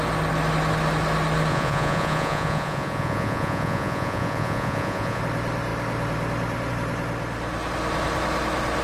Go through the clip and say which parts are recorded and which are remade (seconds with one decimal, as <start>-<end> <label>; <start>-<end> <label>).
0.0-1.5 recorded; 1.5-5.2 remade; 5.2-8.8 recorded